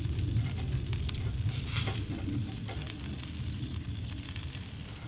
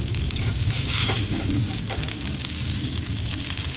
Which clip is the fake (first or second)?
second